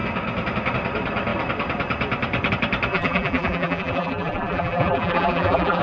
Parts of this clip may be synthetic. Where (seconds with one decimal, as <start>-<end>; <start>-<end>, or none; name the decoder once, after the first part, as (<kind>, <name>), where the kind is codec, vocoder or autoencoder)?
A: 2.9-5.8 (vocoder, BigVGAN v2)